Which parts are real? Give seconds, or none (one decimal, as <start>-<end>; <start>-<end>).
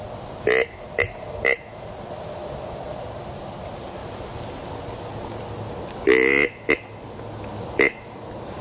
0.0-8.6